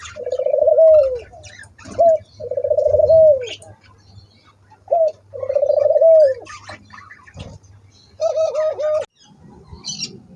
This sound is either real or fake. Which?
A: real